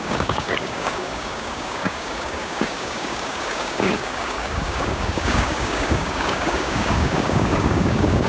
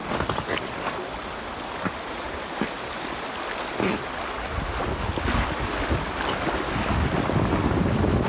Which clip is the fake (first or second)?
first